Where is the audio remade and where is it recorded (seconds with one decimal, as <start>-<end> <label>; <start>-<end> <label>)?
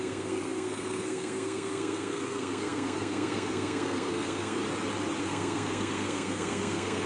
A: 0.0-4.6 remade; 4.6-5.2 recorded; 5.2-7.1 remade